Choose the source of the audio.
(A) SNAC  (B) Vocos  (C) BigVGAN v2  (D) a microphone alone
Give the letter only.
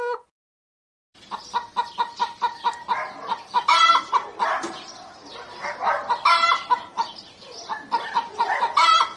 D